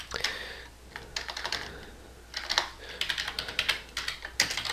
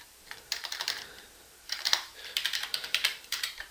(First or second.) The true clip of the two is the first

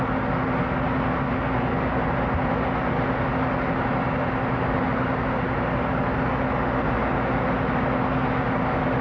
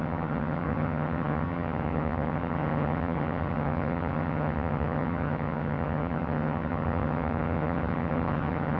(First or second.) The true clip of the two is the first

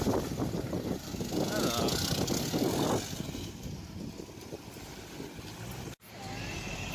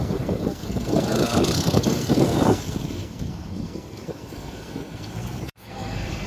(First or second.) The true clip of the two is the first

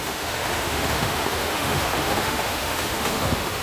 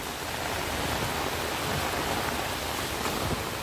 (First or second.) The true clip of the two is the second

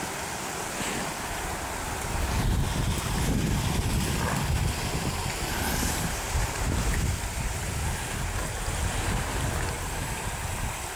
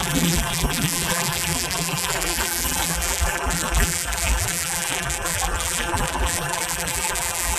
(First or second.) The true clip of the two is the first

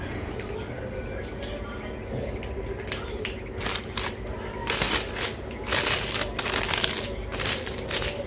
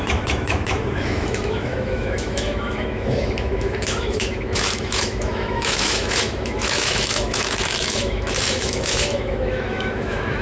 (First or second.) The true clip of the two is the first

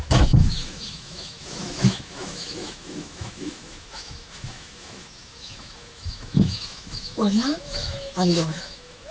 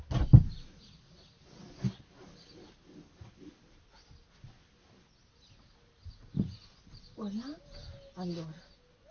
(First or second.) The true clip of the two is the second